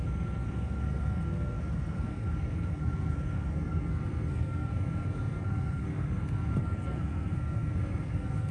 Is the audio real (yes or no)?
no